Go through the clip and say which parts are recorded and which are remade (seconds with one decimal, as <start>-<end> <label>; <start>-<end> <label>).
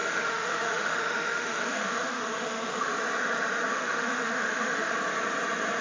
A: 0.0-2.9 remade; 2.9-3.7 recorded; 3.7-4.9 remade; 4.9-5.8 recorded